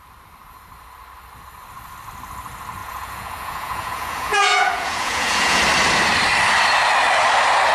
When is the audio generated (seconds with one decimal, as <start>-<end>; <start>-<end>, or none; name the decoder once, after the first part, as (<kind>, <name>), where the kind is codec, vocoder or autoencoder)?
2.8-5.6 (vocoder, Vocos)